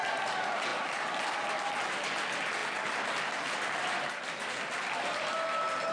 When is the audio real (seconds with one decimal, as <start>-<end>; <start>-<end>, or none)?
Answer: 0.0-5.9